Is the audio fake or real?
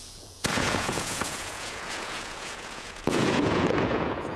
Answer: fake